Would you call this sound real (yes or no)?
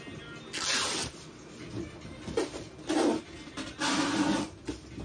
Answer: yes